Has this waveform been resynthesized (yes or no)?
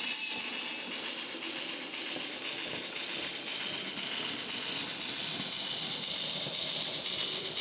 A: no